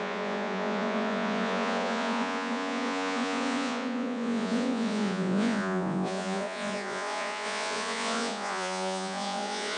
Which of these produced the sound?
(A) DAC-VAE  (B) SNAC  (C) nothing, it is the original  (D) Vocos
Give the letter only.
D